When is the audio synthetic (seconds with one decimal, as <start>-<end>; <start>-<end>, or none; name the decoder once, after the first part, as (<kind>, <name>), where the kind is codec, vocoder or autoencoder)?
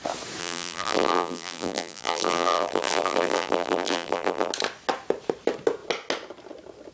0.4-4.5 (vocoder, BigVGAN v2)